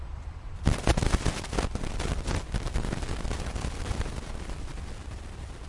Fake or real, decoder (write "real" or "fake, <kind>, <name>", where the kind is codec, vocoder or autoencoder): real